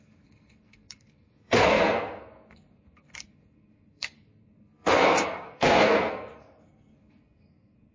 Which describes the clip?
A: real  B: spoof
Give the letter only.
B